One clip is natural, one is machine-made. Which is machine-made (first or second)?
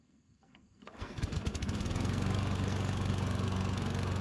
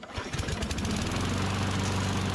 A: first